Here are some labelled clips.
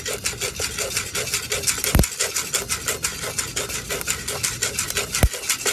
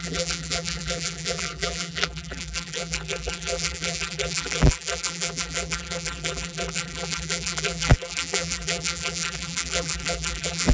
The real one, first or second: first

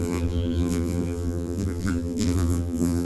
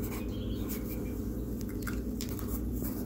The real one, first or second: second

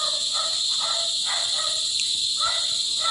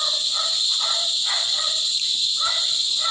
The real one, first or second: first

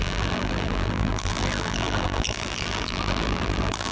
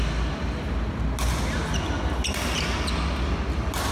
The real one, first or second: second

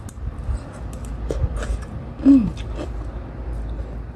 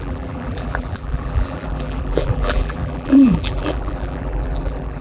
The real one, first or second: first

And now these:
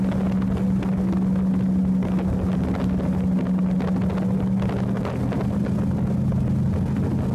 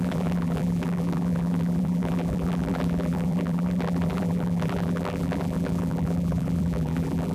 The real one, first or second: first